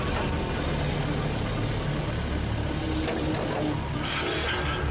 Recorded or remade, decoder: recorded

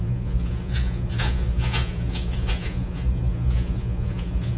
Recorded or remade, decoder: remade, vocoder, Vocos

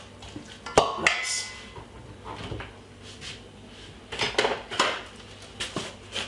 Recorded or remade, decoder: recorded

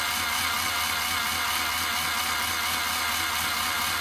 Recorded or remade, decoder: recorded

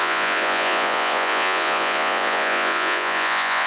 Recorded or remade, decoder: remade, vocoder, Vocos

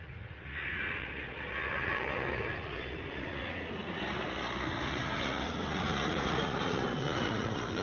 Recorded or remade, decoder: remade, vocoder, Vocos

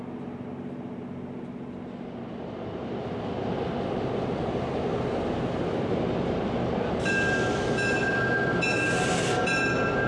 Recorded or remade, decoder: recorded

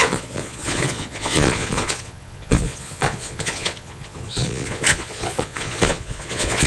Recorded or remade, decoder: remade, vocoder, Vocos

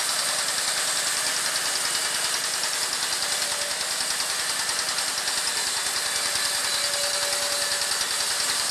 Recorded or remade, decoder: recorded